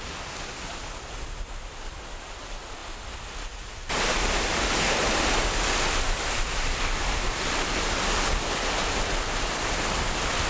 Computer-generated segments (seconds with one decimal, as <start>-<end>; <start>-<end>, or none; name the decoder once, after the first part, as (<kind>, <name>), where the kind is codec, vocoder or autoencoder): none